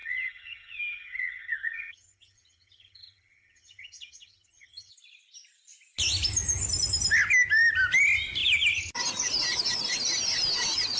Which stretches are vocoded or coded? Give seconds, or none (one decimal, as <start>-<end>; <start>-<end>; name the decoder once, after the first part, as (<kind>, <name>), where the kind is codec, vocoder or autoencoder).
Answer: 0.0-4.9 (vocoder, HiFi-GAN)